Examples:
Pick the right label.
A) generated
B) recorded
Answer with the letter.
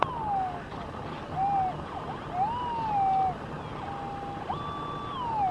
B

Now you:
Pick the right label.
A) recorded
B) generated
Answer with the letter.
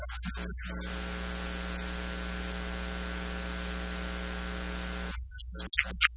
A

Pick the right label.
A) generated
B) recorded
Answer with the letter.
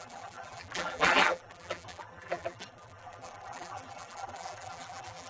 A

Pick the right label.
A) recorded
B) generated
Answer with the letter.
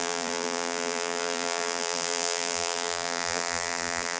B